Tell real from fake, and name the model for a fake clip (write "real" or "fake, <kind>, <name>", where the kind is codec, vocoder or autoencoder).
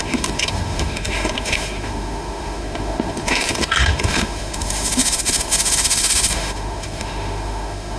fake, autoencoder, DAC-VAE